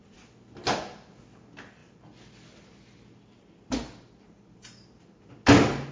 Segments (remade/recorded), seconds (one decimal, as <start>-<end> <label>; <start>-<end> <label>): 0.0-1.8 recorded; 1.8-5.3 remade; 5.3-5.9 recorded